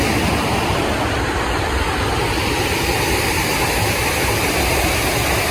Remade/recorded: recorded